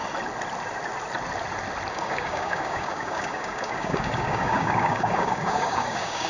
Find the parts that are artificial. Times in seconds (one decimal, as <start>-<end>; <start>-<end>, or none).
1.9-6.3